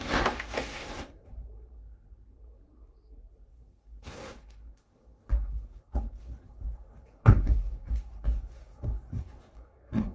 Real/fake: fake